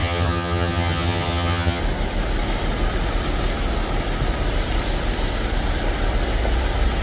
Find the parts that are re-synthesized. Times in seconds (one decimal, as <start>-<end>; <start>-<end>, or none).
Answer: 0.0-1.8